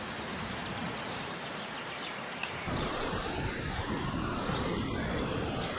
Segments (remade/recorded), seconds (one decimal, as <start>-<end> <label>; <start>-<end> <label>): 0.0-0.8 recorded; 0.8-1.4 remade; 1.4-2.4 recorded; 2.4-3.8 remade; 3.8-5.8 recorded